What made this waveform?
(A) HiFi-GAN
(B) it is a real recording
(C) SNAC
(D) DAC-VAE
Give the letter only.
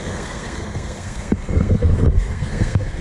C